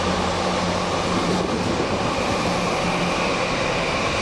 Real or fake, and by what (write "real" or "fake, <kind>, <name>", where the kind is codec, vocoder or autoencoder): real